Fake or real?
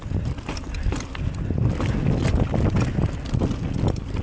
real